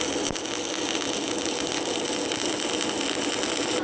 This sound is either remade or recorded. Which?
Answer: recorded